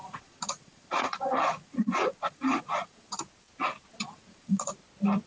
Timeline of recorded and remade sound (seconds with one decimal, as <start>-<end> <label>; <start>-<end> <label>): 0.0-3.2 remade; 3.2-3.9 recorded; 3.9-4.7 remade; 4.7-5.3 recorded